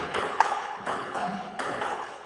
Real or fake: fake